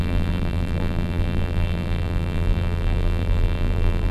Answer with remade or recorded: remade